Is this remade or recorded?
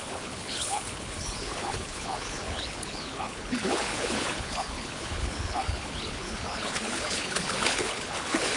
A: remade